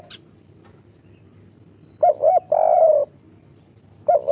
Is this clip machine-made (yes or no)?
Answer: no